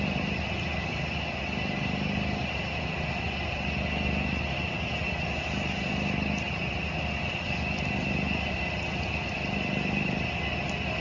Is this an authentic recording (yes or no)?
yes